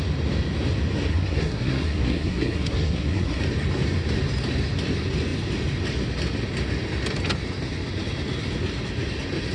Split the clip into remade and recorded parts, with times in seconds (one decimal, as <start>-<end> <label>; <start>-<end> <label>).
0.0-1.1 recorded; 1.1-3.4 remade; 3.4-9.5 recorded